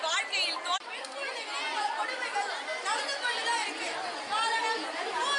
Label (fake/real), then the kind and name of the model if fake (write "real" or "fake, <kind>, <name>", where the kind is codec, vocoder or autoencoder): real